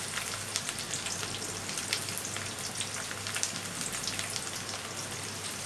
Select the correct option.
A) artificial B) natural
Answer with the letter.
B